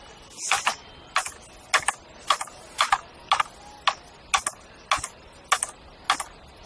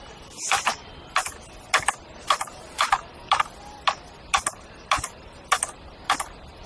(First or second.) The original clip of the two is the first